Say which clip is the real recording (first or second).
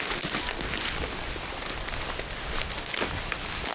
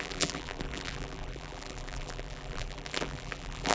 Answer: first